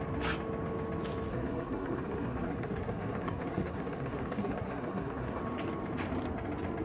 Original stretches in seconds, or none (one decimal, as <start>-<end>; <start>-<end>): 0.0-1.3; 5.4-6.8